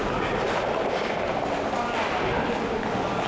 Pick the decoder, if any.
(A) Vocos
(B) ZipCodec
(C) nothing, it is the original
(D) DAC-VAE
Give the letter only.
C